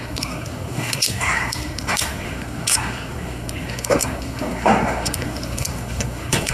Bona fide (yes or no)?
no